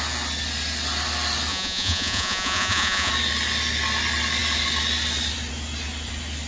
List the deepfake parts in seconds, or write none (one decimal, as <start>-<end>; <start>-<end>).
1.5-3.1